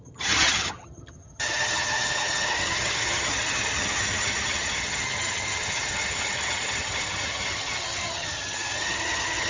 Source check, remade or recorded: remade